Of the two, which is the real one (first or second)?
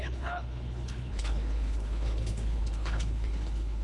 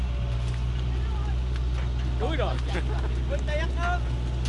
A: second